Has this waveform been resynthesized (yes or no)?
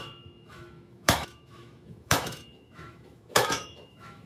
yes